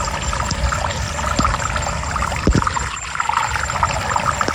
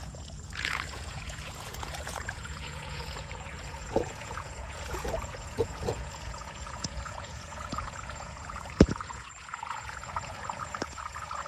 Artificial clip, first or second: second